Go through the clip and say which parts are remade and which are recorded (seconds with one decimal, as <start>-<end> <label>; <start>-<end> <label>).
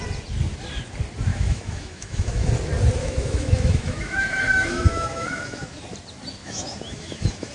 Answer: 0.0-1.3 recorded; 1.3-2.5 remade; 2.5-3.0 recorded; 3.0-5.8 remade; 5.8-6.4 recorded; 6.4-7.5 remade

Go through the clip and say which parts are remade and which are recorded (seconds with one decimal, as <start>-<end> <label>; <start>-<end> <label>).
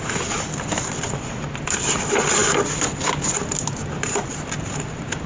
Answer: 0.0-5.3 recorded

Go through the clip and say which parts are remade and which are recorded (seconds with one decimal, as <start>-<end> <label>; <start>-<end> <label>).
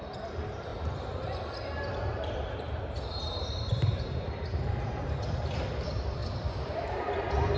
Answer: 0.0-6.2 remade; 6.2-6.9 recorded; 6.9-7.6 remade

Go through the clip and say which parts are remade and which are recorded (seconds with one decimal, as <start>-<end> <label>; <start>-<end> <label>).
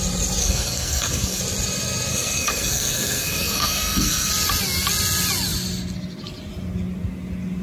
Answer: 0.0-0.4 recorded; 0.4-1.4 remade; 1.4-2.1 recorded; 2.1-4.3 remade; 4.3-7.6 recorded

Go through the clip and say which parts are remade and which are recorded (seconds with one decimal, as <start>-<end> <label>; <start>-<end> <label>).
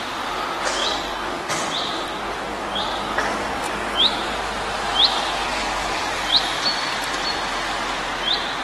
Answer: 0.0-0.8 recorded; 0.8-1.5 remade; 1.5-2.5 recorded; 2.5-4.2 remade; 4.2-5.5 recorded; 5.5-6.3 remade; 6.3-8.6 recorded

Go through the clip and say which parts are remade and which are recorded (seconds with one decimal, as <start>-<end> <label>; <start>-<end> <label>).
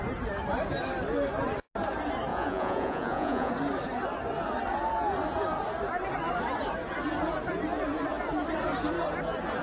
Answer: 0.0-2.3 recorded; 2.3-3.5 remade; 3.5-9.6 recorded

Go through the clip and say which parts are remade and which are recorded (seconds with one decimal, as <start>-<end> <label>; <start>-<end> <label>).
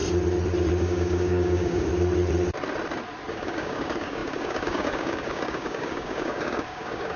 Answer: 0.0-0.8 recorded; 0.8-1.9 remade; 1.9-3.3 recorded; 3.3-7.2 remade